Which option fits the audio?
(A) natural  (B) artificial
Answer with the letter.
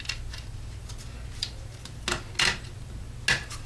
A